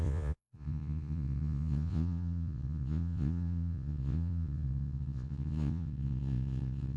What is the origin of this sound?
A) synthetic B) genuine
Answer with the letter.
A